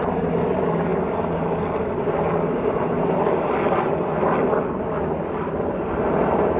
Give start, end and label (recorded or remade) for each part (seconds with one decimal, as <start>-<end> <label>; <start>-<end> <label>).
0.0-6.6 recorded